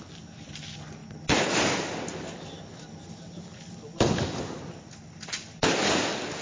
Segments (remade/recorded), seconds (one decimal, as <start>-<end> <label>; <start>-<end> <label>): 0.0-6.4 recorded